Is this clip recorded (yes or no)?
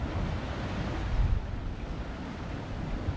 yes